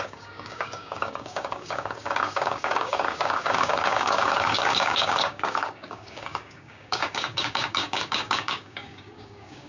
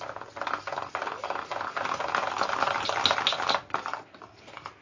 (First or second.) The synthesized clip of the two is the first